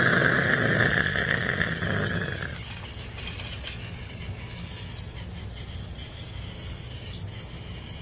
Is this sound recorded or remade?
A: recorded